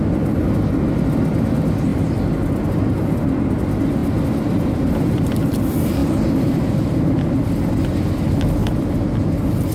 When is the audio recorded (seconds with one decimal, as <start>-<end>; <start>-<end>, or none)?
0.0-1.9; 2.6-4.0; 4.7-6.0; 7.5-9.7